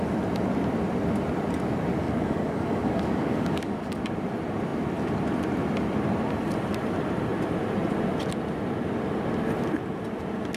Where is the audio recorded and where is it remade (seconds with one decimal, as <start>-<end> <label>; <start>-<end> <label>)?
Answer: 0.0-2.0 recorded; 2.0-4.0 remade; 4.0-10.6 recorded